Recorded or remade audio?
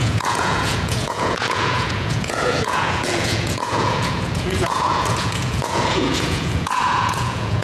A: remade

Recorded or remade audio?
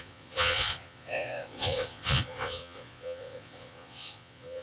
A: remade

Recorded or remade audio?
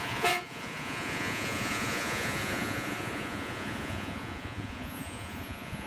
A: remade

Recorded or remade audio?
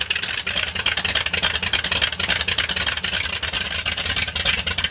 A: recorded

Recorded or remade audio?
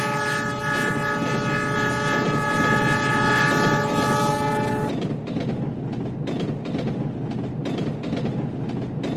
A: recorded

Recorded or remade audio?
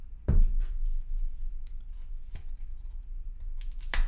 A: recorded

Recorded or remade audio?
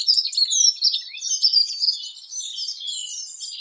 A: recorded